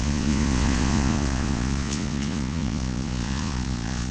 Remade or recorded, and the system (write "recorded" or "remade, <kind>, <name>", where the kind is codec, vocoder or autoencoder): remade, vocoder, Vocos